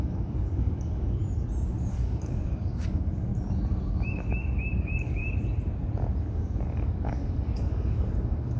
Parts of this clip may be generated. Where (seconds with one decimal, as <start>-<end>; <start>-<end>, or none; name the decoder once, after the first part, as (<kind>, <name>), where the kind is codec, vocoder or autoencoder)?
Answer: 0.0-1.2 (codec, DAC); 1.9-3.3; 3.9-5.2; 6.2-8.6